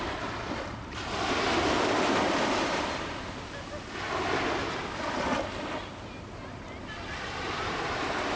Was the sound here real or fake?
real